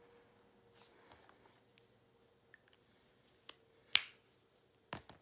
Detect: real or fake real